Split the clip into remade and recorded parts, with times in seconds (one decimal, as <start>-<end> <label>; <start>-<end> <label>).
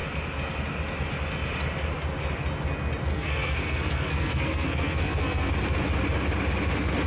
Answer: 0.0-3.1 recorded; 3.1-5.5 remade; 5.5-7.1 recorded